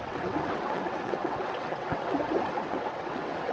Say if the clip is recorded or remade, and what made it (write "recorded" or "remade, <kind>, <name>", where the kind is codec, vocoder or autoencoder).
remade, vocoder, WaveNeXt